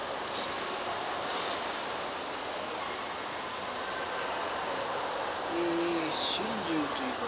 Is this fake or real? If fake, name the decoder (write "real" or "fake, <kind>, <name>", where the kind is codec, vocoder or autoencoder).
real